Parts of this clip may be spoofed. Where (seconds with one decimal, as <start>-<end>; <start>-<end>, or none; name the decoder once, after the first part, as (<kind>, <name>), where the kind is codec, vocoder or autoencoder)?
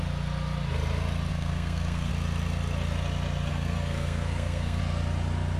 1.3-2.1 (codec, SNAC); 3.5-4.8